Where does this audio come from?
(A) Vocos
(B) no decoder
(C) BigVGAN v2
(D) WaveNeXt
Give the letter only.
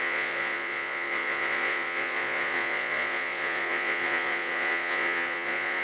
A